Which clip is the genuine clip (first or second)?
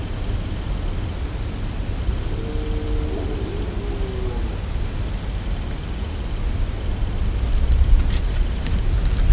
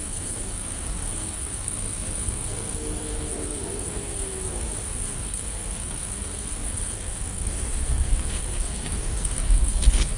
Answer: first